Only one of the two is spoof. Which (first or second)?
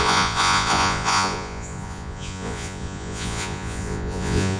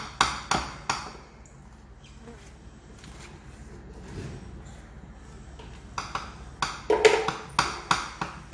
first